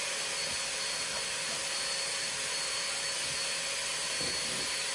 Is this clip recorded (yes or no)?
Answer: yes